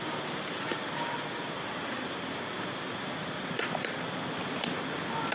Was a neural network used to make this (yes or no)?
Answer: no